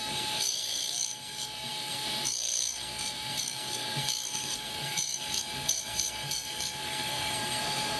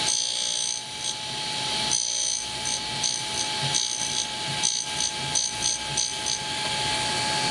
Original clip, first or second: second